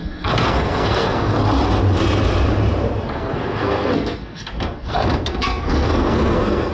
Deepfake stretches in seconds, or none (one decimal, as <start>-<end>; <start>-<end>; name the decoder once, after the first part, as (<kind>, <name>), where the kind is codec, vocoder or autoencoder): 0.0-1.4 (codec, SNAC); 3.1-6.7